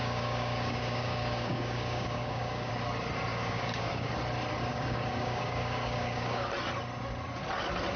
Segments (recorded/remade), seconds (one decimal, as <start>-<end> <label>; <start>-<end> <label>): 0.0-2.7 remade; 2.7-3.3 recorded; 3.3-4.1 remade; 4.1-4.7 recorded; 4.7-6.5 remade; 6.5-8.0 recorded